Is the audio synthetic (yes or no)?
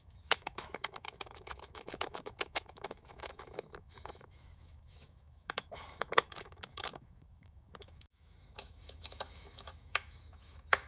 yes